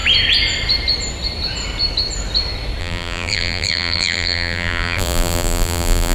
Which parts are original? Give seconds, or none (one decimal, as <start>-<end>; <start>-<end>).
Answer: 0.0-2.8